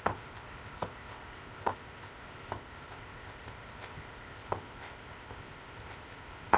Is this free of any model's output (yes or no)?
no